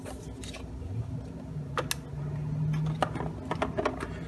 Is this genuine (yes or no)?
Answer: yes